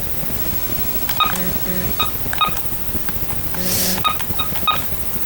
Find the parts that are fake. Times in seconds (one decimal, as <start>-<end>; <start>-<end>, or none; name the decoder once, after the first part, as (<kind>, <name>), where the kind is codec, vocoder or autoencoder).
none